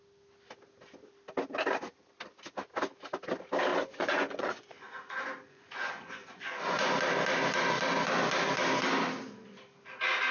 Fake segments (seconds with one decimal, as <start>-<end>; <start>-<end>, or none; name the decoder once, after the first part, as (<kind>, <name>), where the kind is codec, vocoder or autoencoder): 3.7-6.9 (vocoder, Vocos)